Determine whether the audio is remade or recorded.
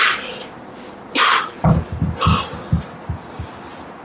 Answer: recorded